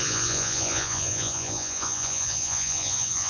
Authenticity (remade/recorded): remade